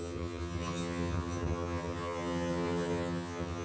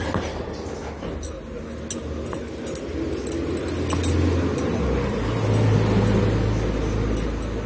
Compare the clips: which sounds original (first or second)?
second